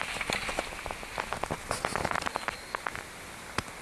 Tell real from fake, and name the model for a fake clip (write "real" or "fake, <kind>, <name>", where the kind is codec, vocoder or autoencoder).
real